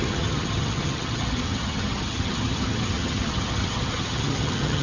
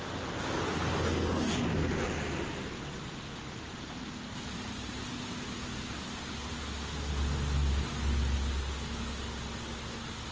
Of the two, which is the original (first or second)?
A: second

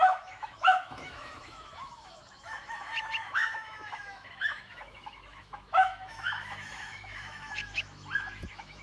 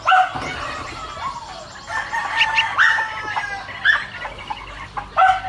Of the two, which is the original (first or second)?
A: second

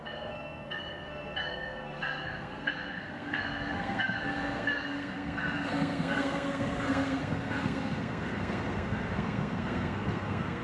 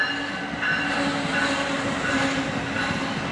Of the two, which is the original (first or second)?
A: second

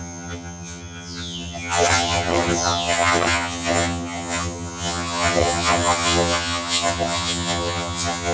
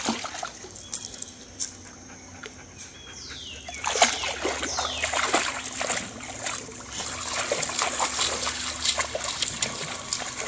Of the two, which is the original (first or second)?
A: second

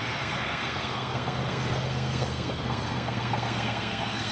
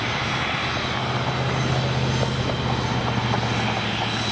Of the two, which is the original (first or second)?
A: second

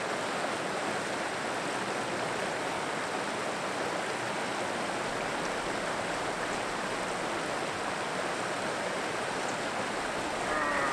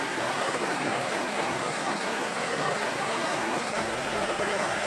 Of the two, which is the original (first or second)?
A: first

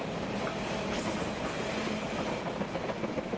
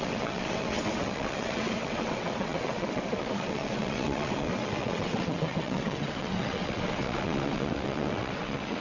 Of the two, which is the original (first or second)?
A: first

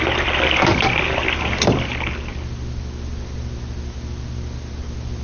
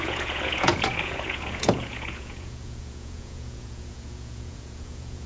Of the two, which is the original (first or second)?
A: first